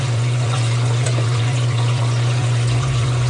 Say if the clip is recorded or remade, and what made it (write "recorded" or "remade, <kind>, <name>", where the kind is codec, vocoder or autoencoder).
remade, vocoder, Vocos